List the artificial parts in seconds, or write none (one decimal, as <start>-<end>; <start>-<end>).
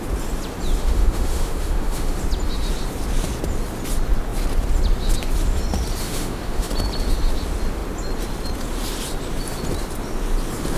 0.8-2.2; 6.0-6.7